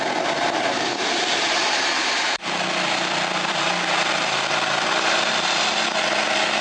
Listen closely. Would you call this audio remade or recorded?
remade